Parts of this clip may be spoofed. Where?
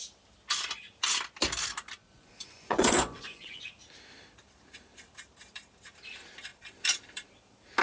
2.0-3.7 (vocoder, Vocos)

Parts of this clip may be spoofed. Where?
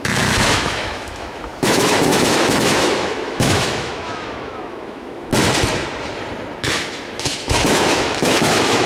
0.0-5.3 (autoencoder, DAC-VAE); 6.6-8.9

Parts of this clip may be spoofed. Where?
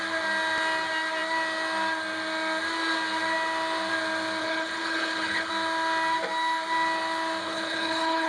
4.4-5.5 (codec, HILCodec); 7.4-8.3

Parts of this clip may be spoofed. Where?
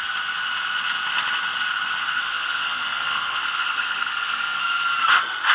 2.0-4.6 (codec, SNAC)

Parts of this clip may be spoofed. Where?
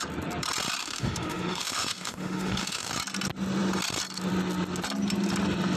0.8-2.9 (autoencoder, DAC-VAE)